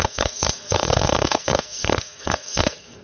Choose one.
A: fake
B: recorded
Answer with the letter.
A